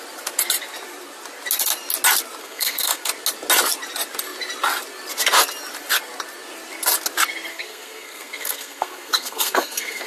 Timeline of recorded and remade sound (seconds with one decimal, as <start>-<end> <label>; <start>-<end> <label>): 0.0-2.4 recorded; 2.4-3.1 remade; 3.1-7.5 recorded; 7.5-10.1 remade